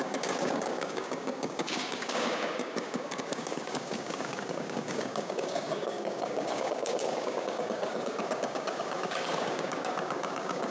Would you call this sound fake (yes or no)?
yes